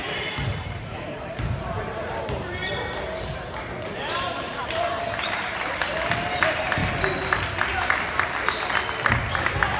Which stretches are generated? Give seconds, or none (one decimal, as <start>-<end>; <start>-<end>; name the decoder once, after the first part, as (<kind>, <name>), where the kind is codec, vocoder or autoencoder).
0.0-2.6 (vocoder, BigVGAN v2); 3.6-6.8; 9.4-9.8